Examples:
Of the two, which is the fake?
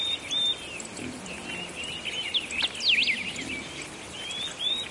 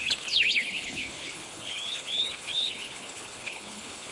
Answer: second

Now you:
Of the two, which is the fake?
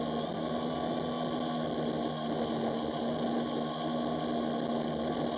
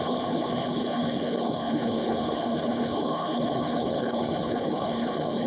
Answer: second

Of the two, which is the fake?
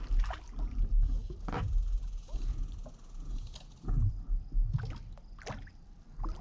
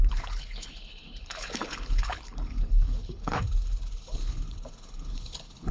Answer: second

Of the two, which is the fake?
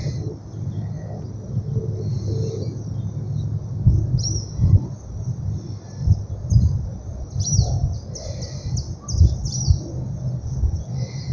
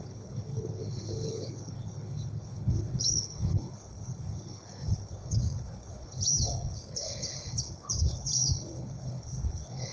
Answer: second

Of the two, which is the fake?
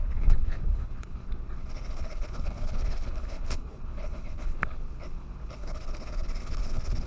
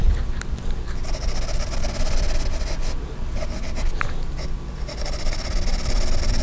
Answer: first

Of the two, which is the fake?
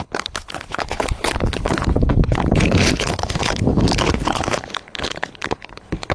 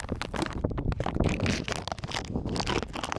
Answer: first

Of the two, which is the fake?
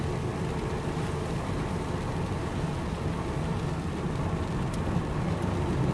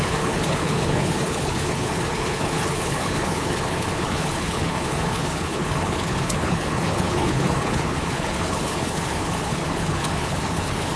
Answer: second